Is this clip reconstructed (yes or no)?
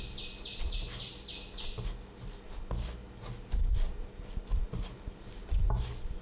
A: no